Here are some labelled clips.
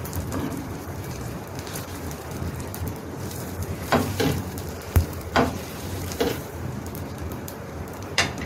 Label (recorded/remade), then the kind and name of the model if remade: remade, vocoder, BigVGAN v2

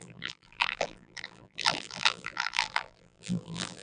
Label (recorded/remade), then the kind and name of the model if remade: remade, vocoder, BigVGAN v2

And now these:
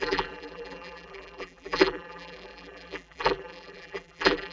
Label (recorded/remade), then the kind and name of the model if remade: remade, vocoder, BigVGAN v2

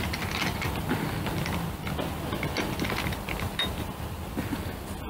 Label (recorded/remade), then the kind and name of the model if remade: recorded